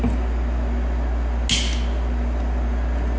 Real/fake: real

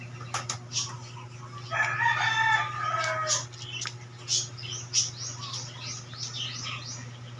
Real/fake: real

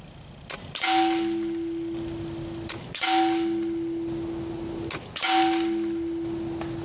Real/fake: real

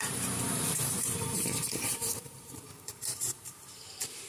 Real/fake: fake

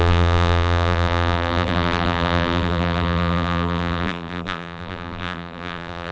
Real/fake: fake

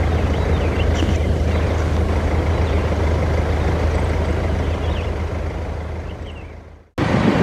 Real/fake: real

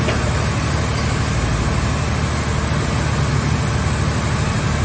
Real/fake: real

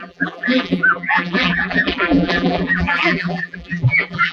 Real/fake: fake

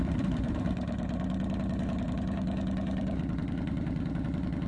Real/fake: fake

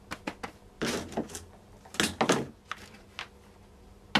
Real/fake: real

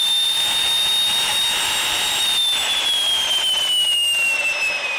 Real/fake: fake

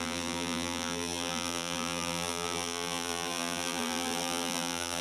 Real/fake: fake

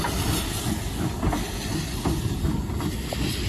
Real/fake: real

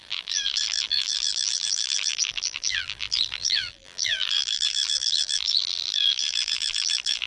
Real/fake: fake